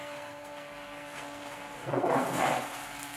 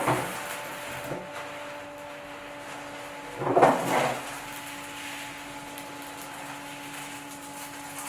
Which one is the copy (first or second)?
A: first